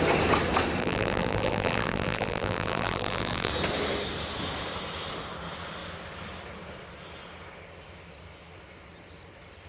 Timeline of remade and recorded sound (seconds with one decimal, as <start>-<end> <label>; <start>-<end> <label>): 0.0-0.8 recorded; 0.8-3.5 remade; 3.5-9.7 recorded